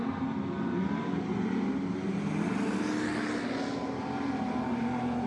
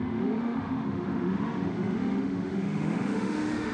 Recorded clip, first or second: first